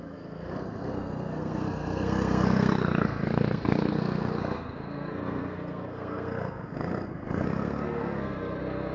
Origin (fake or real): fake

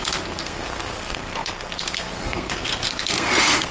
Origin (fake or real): fake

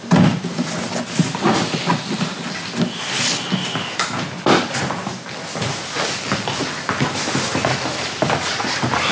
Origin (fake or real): real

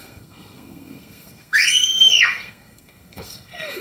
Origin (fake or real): fake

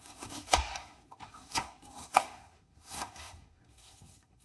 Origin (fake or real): fake